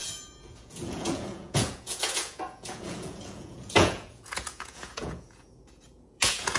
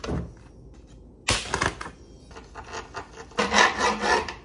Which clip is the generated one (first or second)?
first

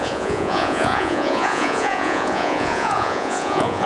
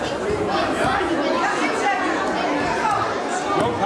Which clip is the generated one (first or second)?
first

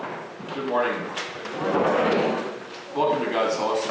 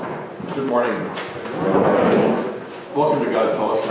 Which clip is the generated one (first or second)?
second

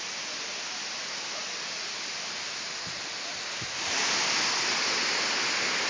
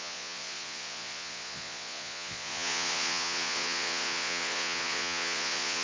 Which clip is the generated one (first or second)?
second